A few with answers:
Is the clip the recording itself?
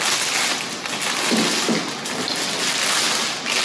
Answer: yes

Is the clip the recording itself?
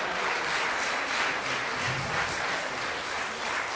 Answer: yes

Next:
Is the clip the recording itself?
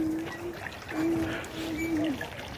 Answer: yes